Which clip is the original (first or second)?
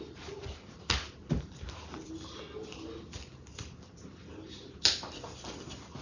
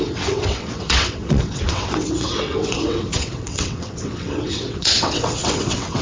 first